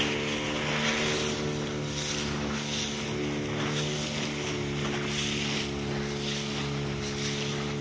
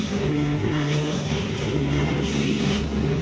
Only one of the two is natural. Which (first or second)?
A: first